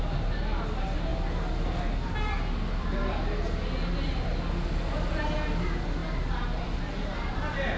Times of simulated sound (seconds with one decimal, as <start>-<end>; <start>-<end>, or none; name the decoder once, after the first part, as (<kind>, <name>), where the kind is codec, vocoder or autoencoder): none